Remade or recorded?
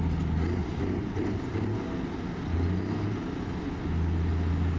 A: recorded